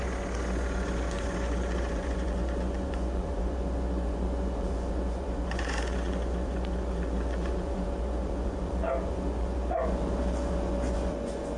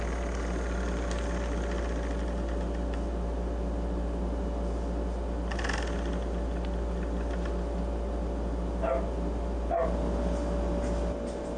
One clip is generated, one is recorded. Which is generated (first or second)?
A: first